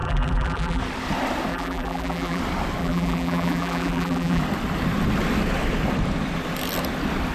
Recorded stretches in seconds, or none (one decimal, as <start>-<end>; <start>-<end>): 0.8-1.5; 2.4-2.8; 4.4-7.3